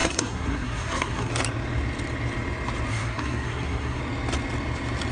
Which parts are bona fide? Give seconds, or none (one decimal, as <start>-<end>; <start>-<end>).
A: 1.3-2.9; 4.0-5.1